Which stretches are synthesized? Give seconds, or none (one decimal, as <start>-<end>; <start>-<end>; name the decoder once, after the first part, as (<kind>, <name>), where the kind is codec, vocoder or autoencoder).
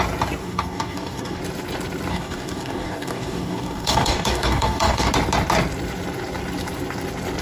0.4-1.4 (codec, DAC); 2.1-5.1